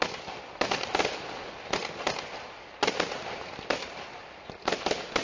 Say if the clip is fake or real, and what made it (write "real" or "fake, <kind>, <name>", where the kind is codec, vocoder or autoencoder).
real